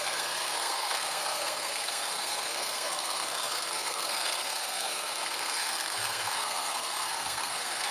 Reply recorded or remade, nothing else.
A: remade